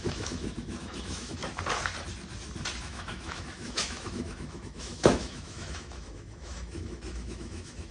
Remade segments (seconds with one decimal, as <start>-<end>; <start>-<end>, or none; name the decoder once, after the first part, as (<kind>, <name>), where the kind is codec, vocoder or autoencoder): 0.0-1.4 (autoencoder, DAC-VAE); 2.8-7.9